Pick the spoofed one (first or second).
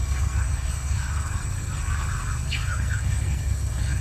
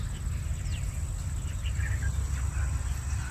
first